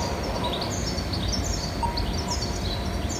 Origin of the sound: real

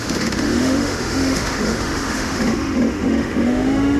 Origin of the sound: fake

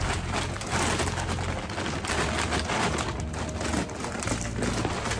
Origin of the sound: real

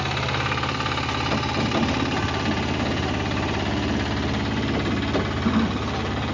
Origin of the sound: real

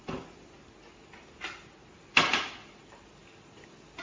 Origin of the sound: real